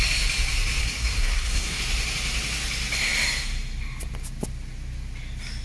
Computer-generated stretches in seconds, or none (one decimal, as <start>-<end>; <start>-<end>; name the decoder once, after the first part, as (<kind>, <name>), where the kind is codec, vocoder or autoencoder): 0.8-1.8 (codec, SNAC)